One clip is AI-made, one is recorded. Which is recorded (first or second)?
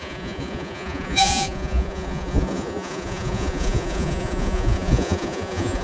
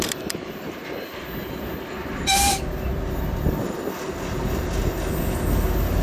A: second